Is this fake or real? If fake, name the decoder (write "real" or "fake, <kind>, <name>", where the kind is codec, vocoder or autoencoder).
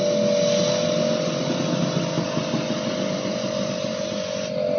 real